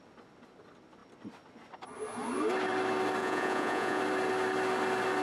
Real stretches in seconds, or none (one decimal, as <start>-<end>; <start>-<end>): 0.0-3.2; 4.0-5.2

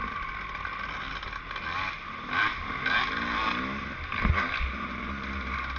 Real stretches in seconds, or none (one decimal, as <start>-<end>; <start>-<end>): 0.0-5.8

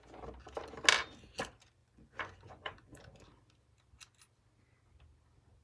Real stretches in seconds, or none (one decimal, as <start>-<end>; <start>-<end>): 0.0-1.8; 3.0-5.6

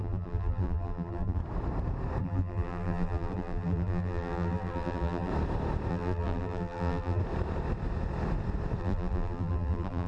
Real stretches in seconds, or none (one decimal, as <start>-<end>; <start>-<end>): 1.4-2.2; 5.3-5.9; 7.2-8.8

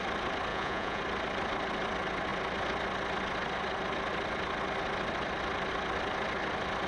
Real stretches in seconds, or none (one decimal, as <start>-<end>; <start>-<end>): 0.0-0.5; 1.0-6.9

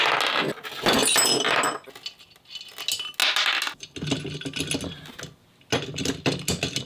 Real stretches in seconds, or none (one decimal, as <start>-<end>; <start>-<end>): 0.0-6.9

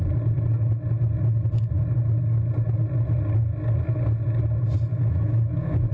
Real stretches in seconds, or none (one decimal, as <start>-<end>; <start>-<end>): 0.0-4.9

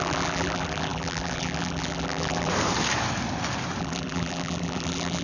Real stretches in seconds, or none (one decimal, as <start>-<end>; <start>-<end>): 2.5-3.8